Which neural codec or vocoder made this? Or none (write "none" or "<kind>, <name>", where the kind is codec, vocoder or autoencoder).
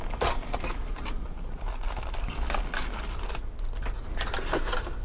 none